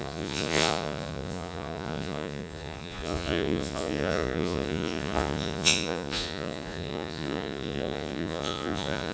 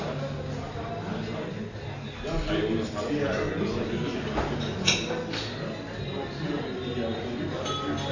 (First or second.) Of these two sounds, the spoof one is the first